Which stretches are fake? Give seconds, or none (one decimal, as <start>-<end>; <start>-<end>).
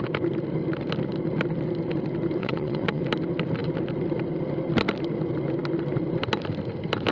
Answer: 2.4-3.0